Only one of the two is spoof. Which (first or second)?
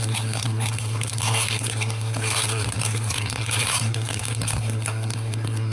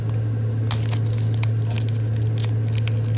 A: first